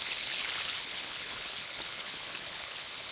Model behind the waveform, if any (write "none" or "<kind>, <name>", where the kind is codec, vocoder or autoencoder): codec, HILCodec